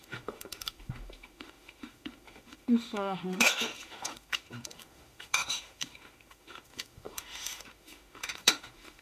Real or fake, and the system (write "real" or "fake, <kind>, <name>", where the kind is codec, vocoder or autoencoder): fake, autoencoder, DAC-VAE